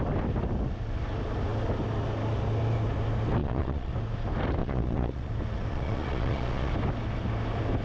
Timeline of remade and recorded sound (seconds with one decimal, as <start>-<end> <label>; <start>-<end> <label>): 0.0-3.4 recorded; 3.4-3.9 remade; 3.9-4.6 recorded; 4.6-5.3 remade; 5.3-5.7 recorded; 5.7-6.7 remade; 6.7-7.8 recorded